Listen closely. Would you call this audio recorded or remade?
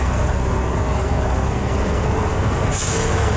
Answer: remade